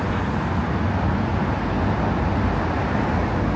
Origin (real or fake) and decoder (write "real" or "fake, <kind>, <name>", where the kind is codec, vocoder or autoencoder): real